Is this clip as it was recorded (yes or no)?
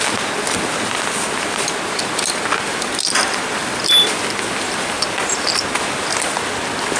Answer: yes